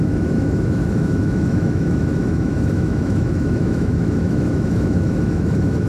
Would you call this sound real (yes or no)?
no